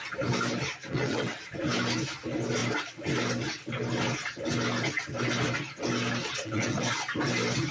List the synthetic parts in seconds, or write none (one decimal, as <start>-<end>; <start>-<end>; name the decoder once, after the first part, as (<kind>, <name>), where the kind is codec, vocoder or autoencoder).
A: 0.8-1.4 (vocoder, WaveNeXt); 6.2-6.8